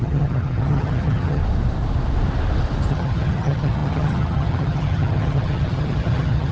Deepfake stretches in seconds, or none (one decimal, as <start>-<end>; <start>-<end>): 0.0-1.4; 2.9-6.5